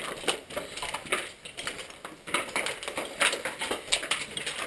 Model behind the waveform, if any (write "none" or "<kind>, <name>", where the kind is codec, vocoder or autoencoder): none